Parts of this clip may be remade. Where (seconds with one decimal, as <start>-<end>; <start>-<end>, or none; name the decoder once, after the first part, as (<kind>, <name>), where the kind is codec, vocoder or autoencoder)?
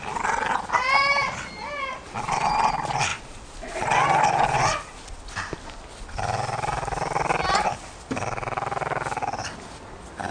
none